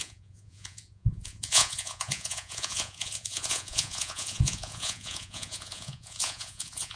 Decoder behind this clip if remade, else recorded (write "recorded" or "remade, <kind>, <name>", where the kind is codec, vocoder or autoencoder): remade, vocoder, Vocos